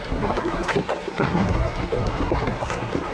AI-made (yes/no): yes